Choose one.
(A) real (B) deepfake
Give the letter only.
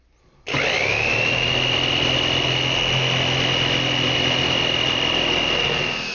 A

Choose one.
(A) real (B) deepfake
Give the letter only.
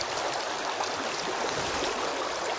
A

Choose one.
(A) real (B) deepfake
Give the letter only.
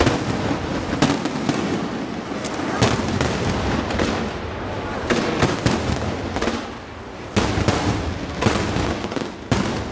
A